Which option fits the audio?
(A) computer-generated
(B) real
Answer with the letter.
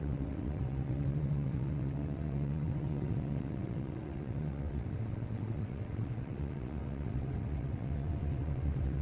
A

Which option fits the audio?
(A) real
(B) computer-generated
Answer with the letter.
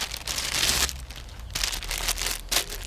A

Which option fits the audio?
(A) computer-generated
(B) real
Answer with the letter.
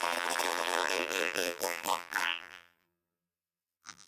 A